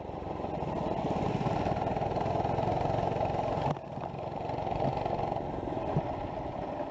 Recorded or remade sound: recorded